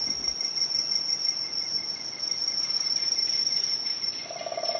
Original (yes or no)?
yes